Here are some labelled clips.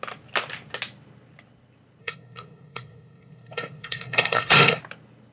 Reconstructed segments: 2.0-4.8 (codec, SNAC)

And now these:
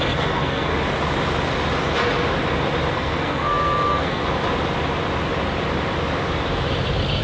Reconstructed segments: 0.0-0.7 (codec, SNAC); 2.9-4.2

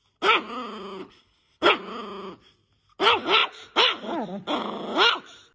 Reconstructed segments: 1.0-1.7 (codec, HILCodec)

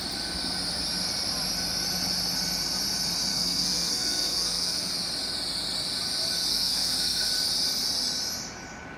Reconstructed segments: 3.3-4.9 (codec, SNAC); 6.5-7.3

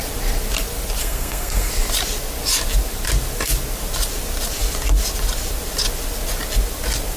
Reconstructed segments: 1.0-1.7 (codec, SNAC)

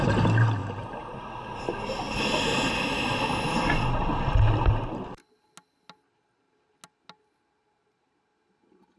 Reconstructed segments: none

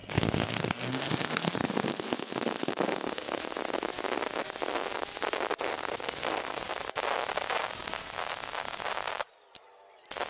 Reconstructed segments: 0.0-3.4 (codec, SNAC); 5.7-6.6

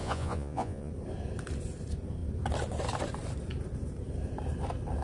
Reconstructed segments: 0.0-0.9 (vocoder, Vocos)